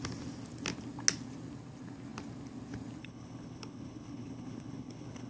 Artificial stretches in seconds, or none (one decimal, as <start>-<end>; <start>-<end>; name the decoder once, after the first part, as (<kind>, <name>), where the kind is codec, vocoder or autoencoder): 3.0-5.3 (codec, HILCodec)